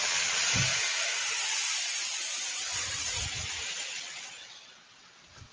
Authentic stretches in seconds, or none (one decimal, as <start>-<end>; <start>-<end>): 0.7-3.9